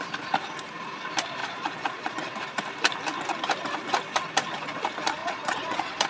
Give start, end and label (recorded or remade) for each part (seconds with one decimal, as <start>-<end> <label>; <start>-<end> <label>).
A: 0.0-1.4 recorded; 1.4-2.3 remade; 2.3-5.2 recorded; 5.2-6.1 remade